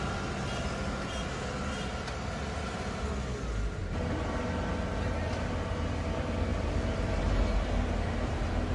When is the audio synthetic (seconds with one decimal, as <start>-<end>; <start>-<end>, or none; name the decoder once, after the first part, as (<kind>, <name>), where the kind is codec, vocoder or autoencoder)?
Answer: none